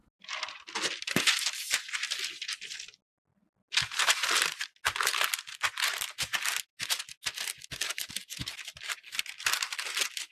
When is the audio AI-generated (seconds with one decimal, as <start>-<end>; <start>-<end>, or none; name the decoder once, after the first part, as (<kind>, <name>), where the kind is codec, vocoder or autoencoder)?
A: none

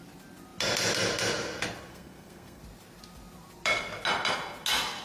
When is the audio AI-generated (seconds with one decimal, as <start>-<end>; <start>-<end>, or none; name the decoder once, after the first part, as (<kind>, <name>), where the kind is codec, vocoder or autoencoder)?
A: 1.9-2.6 (codec, SNAC)

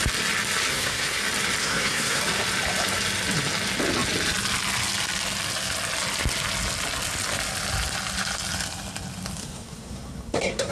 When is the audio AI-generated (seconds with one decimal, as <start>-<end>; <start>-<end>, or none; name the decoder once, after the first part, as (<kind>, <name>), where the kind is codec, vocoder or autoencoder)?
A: 0.7-1.2 (codec, SNAC); 1.6-2.2; 9.4-10.7